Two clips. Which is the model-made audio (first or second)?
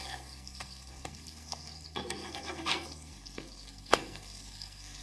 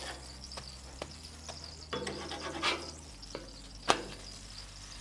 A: first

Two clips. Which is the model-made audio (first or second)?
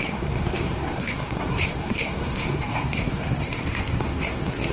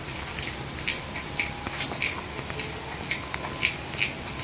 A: first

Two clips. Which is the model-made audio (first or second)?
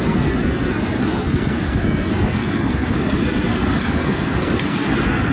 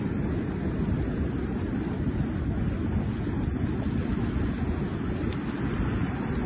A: first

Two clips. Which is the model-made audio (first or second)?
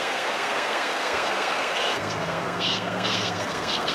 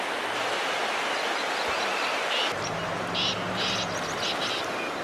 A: first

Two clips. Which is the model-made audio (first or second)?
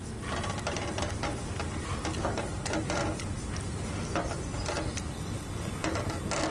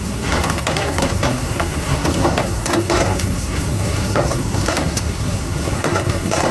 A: second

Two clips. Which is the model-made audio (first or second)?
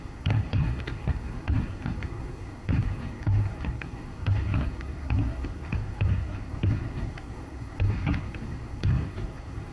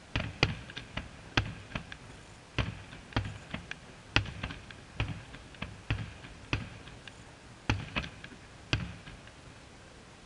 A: first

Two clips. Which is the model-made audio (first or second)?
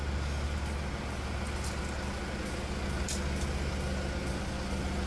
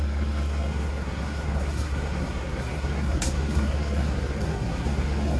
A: second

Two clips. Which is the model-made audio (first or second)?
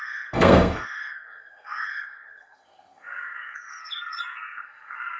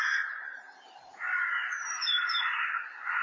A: first